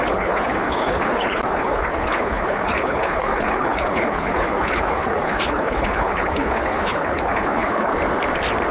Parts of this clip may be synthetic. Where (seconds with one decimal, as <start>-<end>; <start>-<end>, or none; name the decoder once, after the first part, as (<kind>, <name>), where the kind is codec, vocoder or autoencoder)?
0.0-7.9 (codec, HILCodec)

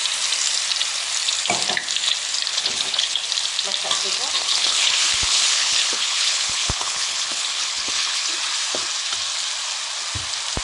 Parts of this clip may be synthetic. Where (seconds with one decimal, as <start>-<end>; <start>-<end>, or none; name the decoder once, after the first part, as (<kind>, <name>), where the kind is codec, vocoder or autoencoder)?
2.5-3.2 (codec, HILCodec); 4.4-8.3